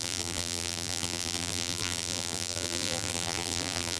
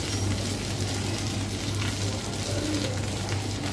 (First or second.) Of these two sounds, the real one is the second